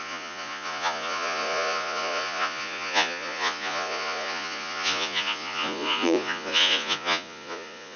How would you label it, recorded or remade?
remade